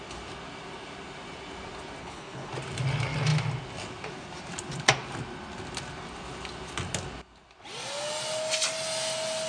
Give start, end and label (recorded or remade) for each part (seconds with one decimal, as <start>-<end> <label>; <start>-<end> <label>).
0.0-2.0 recorded; 2.0-2.5 remade; 2.5-9.5 recorded

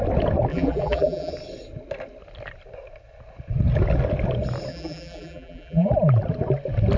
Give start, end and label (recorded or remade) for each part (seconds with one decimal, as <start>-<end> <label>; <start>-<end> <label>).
0.0-0.5 recorded; 0.5-1.3 remade; 1.3-4.7 recorded; 4.7-5.9 remade; 5.9-7.0 recorded

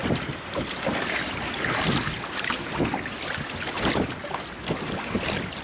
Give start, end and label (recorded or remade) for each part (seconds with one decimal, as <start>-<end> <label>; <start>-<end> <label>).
0.0-5.6 recorded

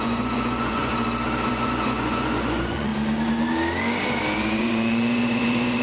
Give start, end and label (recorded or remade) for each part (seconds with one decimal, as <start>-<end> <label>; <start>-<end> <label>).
0.0-0.9 remade; 0.9-1.5 recorded; 1.5-2.9 remade; 2.9-4.6 recorded; 4.6-5.8 remade

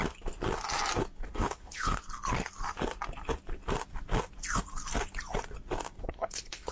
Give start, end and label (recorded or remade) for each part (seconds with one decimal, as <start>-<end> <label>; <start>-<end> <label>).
0.0-1.2 recorded; 1.2-2.0 remade; 2.0-6.0 recorded; 6.0-6.7 remade